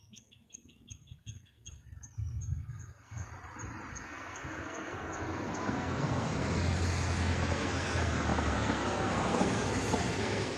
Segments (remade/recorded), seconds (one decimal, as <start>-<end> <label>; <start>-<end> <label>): 0.0-3.3 remade; 3.3-3.9 recorded; 3.9-10.6 remade